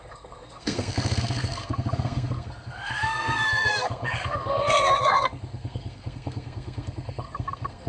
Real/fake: fake